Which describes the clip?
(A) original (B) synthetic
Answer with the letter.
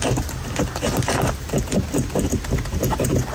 A